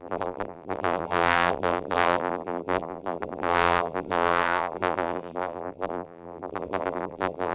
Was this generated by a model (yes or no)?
yes